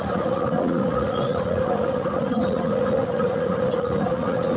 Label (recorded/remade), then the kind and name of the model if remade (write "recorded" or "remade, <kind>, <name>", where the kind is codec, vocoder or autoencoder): remade, vocoder, Vocos